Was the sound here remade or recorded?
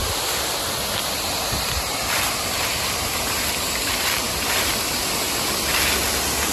recorded